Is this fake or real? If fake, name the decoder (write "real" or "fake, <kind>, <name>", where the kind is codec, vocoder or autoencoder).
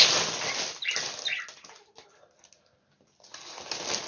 real